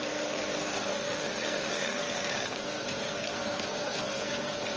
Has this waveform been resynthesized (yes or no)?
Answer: yes